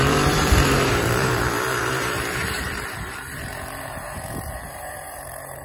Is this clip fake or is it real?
fake